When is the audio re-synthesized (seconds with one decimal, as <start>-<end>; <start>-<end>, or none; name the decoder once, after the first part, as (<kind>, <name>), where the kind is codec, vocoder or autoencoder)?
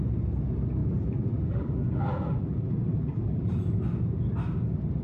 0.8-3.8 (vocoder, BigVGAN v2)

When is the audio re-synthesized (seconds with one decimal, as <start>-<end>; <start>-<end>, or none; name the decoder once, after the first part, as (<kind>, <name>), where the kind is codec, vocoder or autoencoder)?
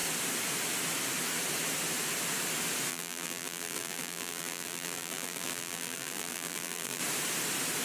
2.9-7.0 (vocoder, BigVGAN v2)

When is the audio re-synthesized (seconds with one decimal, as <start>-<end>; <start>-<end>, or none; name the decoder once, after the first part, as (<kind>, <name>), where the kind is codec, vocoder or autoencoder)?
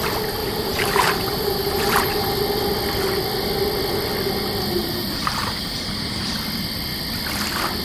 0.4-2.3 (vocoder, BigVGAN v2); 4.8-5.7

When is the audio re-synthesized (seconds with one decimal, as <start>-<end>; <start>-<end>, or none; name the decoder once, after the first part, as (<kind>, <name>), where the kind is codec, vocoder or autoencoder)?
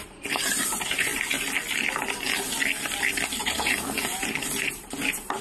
0.0-1.1 (vocoder, BigVGAN v2); 3.4-5.4